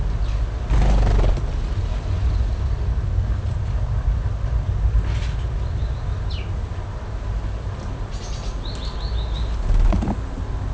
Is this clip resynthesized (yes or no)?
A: no